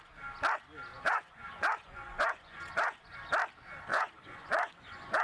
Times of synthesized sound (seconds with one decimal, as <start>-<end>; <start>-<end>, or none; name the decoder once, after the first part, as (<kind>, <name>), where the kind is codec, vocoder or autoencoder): 0.9-3.2 (vocoder, Vocos); 3.9-5.2